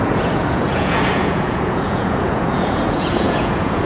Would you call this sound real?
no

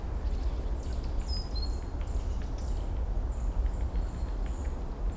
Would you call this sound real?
yes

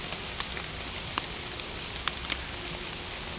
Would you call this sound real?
yes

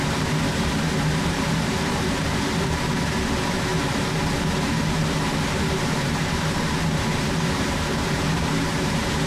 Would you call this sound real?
no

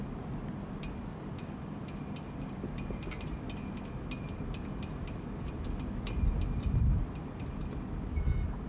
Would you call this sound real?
yes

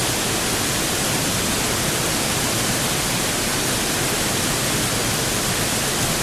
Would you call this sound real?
yes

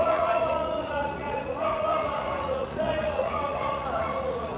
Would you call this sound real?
no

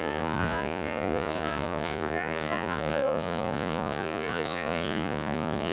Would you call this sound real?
no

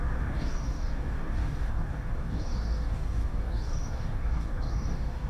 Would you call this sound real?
no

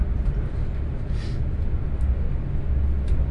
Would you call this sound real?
yes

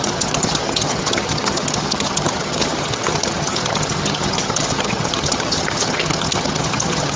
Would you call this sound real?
no